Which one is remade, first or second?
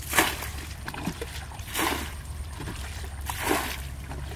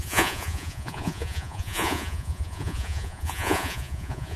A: second